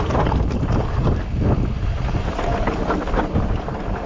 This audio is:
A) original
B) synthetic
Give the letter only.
A